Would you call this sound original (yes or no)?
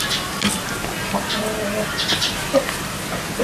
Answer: yes